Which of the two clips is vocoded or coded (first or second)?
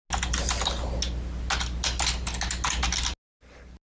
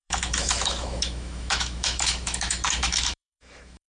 second